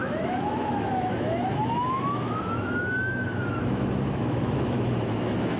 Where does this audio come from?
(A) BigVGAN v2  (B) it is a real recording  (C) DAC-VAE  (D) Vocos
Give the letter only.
C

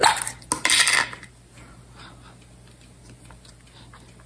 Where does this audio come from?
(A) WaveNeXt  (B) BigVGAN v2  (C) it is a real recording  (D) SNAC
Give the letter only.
C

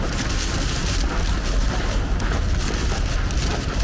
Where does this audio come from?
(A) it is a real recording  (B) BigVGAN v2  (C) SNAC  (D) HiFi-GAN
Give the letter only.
A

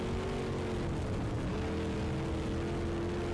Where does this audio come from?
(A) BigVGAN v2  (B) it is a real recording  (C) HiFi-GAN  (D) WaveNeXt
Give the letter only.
B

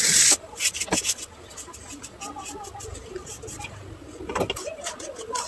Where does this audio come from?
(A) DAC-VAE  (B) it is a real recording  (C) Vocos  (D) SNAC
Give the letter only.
B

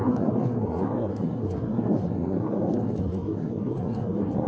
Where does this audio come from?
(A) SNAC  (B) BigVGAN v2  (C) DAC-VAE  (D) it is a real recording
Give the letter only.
A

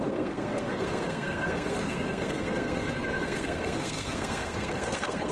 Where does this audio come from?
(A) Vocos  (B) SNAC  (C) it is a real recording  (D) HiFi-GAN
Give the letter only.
B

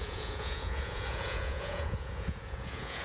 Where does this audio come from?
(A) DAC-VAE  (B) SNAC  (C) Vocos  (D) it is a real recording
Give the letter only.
C